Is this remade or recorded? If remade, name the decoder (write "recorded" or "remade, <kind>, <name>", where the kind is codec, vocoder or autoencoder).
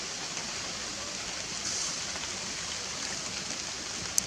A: recorded